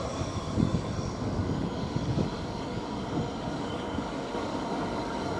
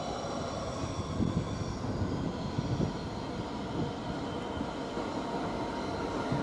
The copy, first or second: first